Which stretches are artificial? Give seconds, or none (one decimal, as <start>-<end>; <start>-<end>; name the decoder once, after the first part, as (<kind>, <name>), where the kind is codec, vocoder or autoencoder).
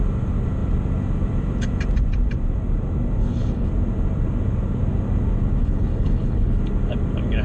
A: 3.2-3.7 (codec, HILCodec); 5.6-6.6